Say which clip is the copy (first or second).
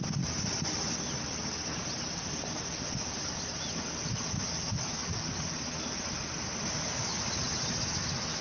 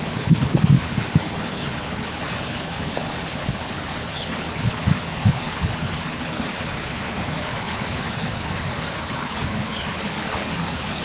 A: second